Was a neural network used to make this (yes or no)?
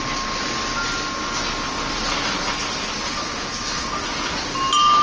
no